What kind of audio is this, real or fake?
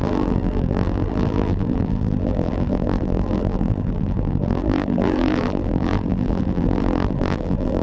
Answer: fake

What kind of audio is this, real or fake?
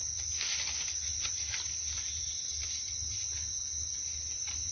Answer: real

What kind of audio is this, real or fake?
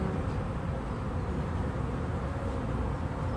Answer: fake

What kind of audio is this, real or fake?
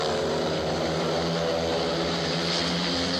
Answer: real